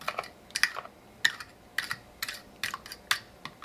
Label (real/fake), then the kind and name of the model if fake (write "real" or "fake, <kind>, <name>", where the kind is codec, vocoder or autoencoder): real